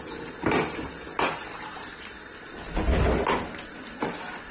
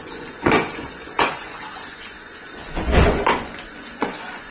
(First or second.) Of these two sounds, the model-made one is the second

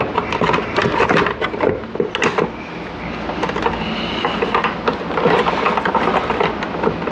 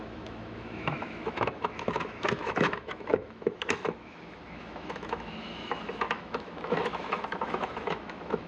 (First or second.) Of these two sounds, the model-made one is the second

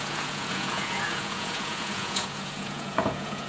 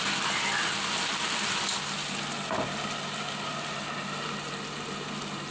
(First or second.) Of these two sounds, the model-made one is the first